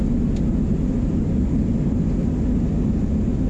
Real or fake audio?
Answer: real